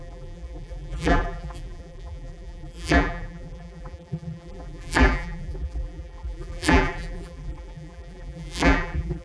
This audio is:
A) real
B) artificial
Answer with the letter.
B